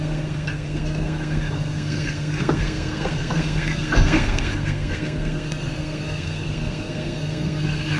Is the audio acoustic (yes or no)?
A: no